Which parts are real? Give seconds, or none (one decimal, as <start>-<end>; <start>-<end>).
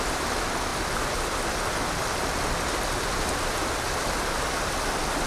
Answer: 0.0-5.3